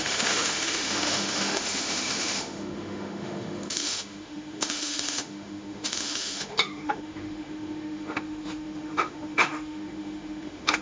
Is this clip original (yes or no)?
no